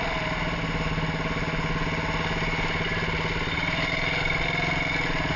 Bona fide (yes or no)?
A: yes